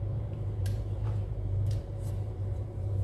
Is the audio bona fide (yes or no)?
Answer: no